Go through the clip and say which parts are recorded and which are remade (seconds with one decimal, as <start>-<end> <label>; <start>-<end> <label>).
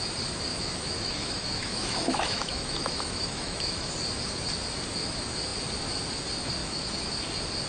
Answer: 0.0-0.5 recorded; 0.5-3.9 remade; 3.9-6.6 recorded; 6.6-7.1 remade; 7.1-7.7 recorded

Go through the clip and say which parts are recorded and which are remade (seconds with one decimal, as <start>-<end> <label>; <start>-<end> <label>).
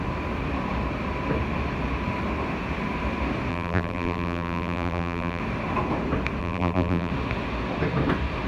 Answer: 0.0-3.5 recorded; 3.5-5.4 remade; 5.4-6.4 recorded; 6.4-7.1 remade; 7.1-8.5 recorded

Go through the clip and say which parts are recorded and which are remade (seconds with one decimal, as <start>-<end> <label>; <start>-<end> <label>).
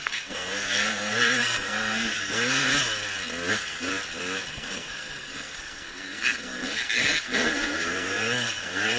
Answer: 0.0-2.7 remade; 2.7-3.5 recorded; 3.5-3.9 remade; 3.9-4.5 recorded; 4.5-9.0 remade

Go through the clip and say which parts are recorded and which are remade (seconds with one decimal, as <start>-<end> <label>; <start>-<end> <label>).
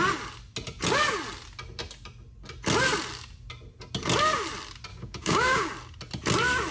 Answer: 0.0-4.9 recorded; 4.9-5.7 remade; 5.7-6.7 recorded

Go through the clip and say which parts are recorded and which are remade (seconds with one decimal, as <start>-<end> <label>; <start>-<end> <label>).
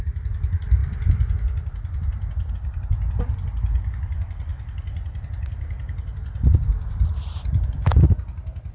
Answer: 0.0-8.7 recorded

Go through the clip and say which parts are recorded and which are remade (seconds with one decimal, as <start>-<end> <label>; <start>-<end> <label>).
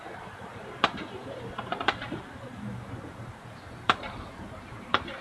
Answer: 0.0-5.2 remade